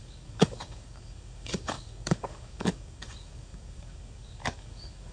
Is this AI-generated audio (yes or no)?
yes